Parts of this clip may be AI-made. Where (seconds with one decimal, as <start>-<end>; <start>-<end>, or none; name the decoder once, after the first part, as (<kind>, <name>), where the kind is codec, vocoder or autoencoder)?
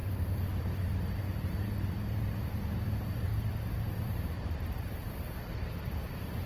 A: 0.0-3.3 (vocoder, BigVGAN v2); 3.8-6.5